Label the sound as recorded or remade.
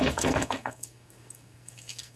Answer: remade